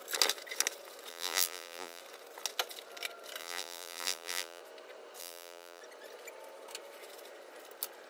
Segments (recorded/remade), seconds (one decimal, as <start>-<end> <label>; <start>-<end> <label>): 0.0-1.1 recorded; 1.1-2.0 remade; 2.0-3.4 recorded; 3.4-4.6 remade; 4.6-5.2 recorded; 5.2-5.8 remade; 5.8-8.1 recorded